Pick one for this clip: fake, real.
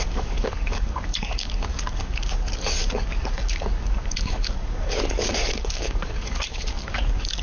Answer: fake